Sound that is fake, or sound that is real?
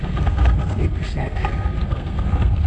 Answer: fake